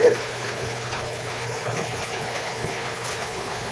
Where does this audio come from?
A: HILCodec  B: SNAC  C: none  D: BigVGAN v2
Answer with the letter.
A